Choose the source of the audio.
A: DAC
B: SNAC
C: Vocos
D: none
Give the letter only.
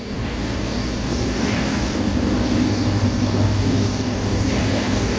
A